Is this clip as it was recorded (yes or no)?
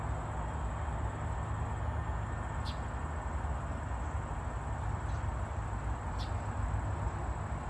yes